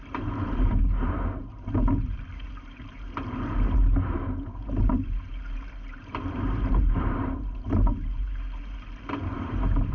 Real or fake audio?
fake